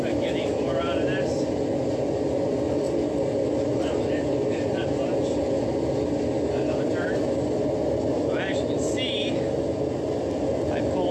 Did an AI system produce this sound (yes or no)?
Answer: no